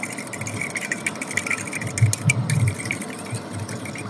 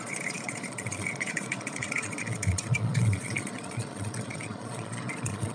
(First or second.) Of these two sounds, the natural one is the first